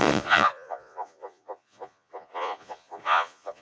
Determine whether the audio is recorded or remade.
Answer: remade